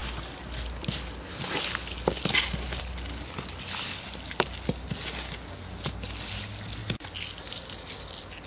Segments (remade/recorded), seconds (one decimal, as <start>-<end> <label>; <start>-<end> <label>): 0.0-8.5 recorded